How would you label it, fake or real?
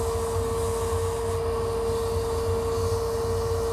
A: real